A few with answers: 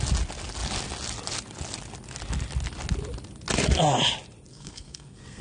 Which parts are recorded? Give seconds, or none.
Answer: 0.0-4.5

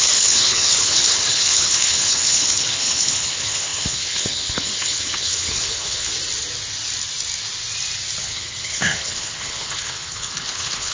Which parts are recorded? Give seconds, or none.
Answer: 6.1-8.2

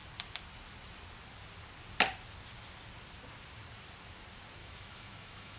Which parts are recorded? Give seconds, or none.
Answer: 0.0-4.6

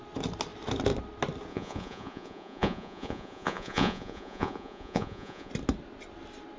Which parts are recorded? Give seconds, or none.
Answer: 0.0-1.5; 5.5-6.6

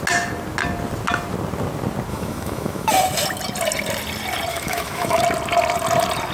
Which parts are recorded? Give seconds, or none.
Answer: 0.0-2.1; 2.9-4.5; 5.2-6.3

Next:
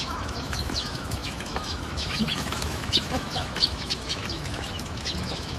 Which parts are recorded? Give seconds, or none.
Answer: none

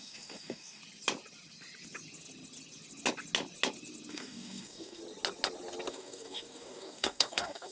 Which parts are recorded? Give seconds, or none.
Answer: 0.8-4.1; 5.0-5.9

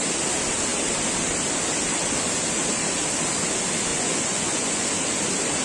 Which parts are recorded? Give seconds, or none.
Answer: 0.0-3.9; 4.9-5.6